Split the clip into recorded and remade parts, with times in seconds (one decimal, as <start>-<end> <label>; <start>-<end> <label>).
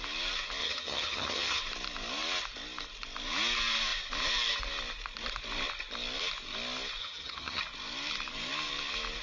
0.0-0.6 recorded; 0.6-1.6 remade; 1.6-7.0 recorded; 7.0-7.6 remade; 7.6-9.2 recorded